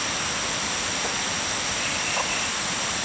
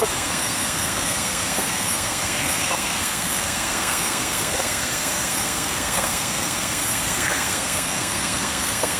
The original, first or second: first